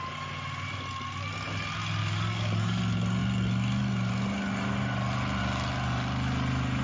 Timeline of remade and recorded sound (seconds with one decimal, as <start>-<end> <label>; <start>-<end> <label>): 0.0-2.0 recorded; 2.0-2.8 remade; 2.8-6.8 recorded